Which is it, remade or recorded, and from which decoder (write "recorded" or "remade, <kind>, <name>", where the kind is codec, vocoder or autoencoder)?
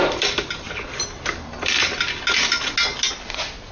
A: recorded